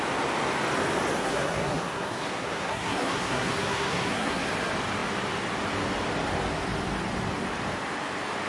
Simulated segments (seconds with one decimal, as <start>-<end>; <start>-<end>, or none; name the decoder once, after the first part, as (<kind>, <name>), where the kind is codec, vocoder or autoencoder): 1.2-4.5 (codec, SNAC)